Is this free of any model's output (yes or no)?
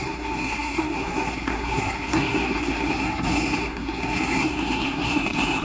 no